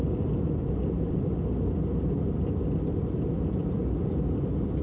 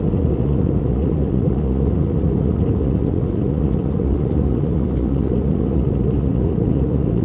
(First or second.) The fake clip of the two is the second